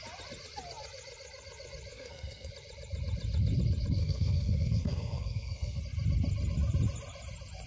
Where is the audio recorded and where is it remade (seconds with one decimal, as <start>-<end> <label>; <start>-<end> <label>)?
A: 0.0-1.9 recorded; 1.9-2.5 remade; 2.5-4.0 recorded; 4.0-5.8 remade; 5.8-7.7 recorded